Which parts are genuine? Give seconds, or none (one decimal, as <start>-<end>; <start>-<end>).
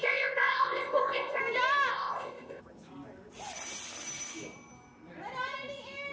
1.4-1.9; 2.6-6.1